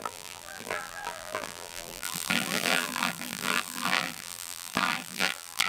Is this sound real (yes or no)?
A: no